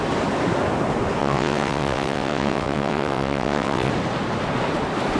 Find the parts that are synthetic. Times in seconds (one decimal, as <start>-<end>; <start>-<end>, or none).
1.2-3.9